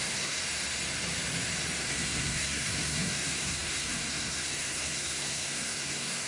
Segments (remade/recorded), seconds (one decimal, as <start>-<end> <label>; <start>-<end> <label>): 0.0-0.4 remade; 0.4-1.8 recorded; 1.8-6.3 remade